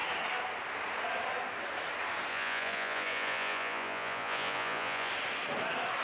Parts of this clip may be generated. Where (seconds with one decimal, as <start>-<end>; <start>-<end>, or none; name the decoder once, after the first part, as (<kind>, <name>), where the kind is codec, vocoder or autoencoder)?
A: 2.3-5.1 (vocoder, Vocos)